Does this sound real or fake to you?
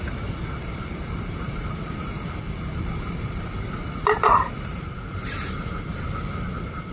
fake